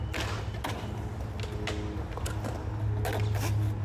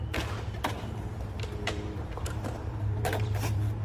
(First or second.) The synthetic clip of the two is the second